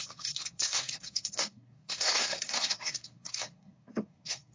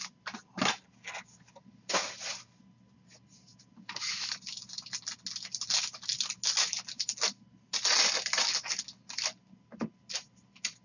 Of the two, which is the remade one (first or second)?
first